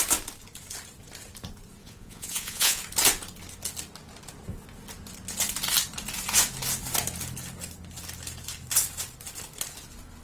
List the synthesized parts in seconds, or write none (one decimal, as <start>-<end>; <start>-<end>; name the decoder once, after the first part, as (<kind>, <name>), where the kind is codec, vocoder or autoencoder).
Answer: 1.8-2.8 (vocoder, Vocos)